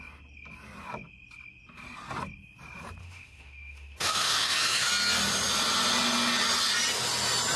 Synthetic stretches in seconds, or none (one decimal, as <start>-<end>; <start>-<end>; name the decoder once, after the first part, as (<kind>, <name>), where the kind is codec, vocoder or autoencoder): 3.0-4.9 (autoencoder, DAC-VAE)